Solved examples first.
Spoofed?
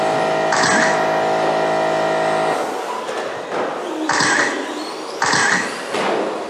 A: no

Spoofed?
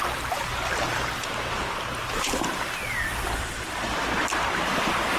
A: no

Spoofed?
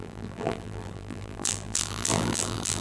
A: yes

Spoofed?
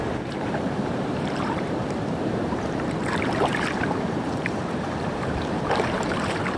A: yes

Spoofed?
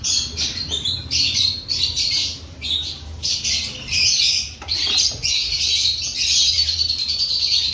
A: yes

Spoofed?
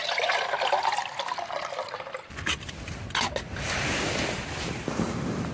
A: no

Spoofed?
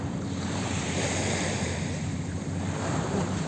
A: yes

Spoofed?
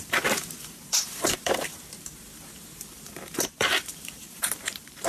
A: yes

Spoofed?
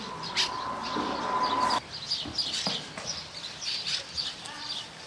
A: no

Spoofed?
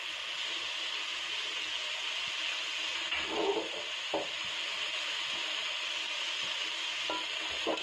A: no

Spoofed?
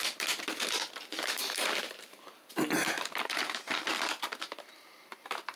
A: yes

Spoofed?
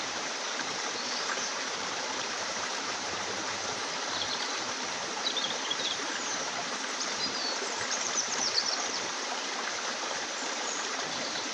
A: yes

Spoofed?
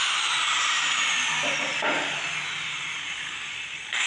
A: no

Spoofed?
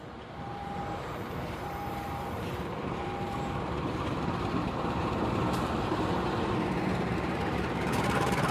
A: yes